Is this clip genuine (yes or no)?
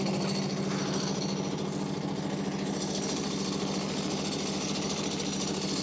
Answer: yes